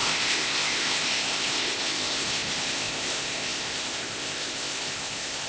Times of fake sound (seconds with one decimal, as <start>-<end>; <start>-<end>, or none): 0.0-5.5